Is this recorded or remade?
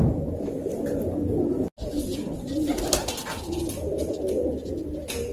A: recorded